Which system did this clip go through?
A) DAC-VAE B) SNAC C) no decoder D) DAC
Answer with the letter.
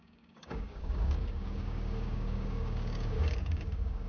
D